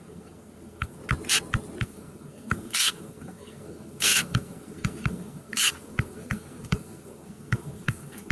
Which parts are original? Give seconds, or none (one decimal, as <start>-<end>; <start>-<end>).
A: 1.0-1.8